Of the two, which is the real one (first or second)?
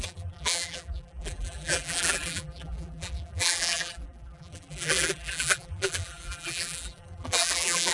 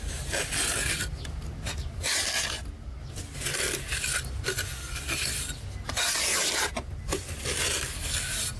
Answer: second